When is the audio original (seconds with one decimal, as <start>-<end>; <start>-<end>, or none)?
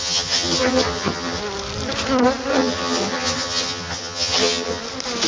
1.4-2.5; 4.8-5.3